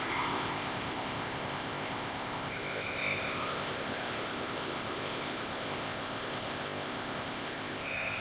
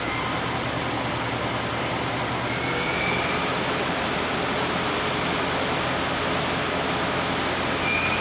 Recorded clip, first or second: second